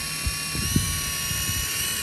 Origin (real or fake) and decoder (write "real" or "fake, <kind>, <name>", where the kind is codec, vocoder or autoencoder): real